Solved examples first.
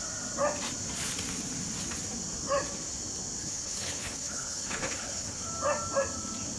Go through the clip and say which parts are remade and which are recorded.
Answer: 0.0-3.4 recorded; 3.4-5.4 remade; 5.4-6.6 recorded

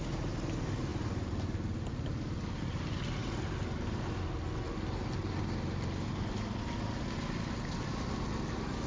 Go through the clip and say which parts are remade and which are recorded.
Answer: 0.0-8.9 recorded

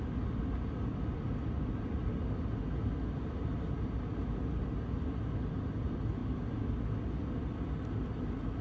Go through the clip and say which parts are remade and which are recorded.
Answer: 0.0-8.6 recorded

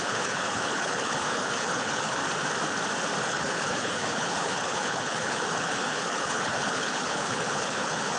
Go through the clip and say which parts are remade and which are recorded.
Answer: 0.0-2.2 remade; 2.2-3.2 recorded; 3.2-8.2 remade

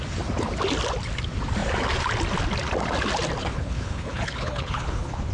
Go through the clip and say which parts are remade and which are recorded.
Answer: 0.0-3.4 recorded; 3.4-5.3 remade